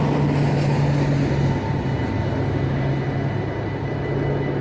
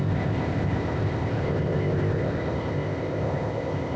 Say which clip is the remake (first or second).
second